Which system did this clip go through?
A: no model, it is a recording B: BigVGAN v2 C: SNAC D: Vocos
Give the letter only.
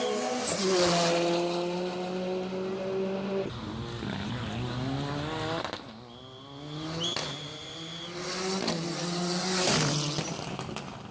A